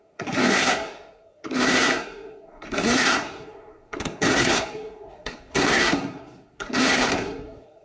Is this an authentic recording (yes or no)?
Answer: no